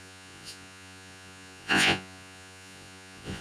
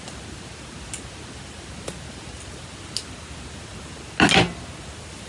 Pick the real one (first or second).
second